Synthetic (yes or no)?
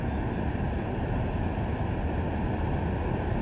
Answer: no